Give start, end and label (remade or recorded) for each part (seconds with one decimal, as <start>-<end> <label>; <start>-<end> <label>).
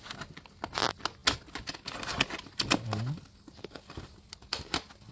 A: 0.0-5.1 recorded